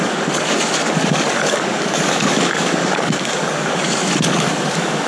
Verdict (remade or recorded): remade